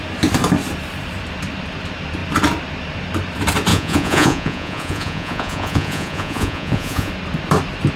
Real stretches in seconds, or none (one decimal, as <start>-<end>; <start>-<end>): 0.0-3.7; 7.1-8.0